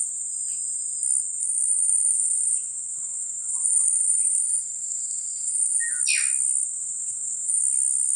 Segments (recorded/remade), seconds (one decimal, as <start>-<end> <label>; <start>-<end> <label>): 0.0-1.4 recorded; 1.4-6.0 remade; 6.0-6.7 recorded; 6.7-7.6 remade; 7.6-8.2 recorded